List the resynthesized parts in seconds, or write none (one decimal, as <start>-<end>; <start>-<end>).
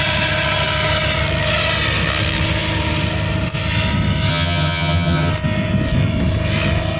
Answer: 4.3-5.3